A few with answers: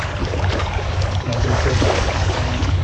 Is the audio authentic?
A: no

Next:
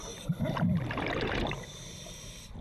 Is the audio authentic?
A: yes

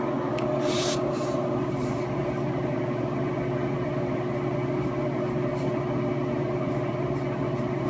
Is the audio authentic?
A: yes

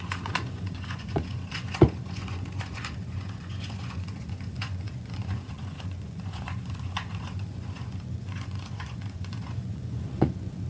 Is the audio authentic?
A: no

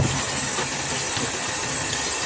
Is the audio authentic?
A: yes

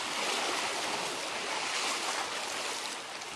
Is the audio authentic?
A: yes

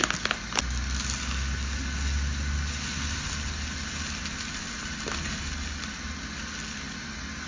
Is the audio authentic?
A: yes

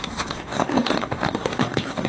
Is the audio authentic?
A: no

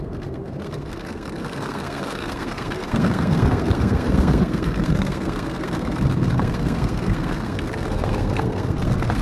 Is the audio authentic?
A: no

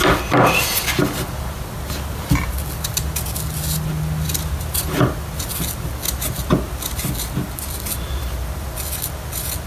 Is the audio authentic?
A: yes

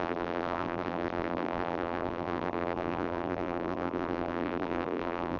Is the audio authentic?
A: no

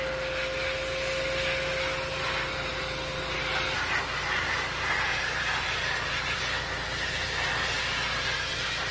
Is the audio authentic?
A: yes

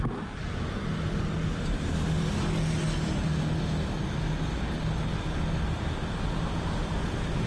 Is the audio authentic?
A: yes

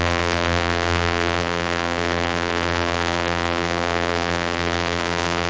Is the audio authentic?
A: no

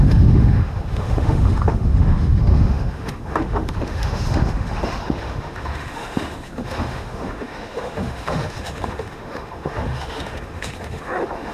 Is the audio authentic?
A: no